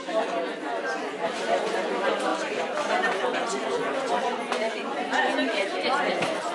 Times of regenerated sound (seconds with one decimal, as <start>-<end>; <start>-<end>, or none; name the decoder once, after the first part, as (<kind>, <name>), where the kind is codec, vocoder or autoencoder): none